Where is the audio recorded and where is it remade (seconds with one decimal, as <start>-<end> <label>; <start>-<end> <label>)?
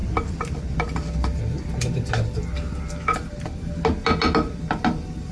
0.0-5.3 recorded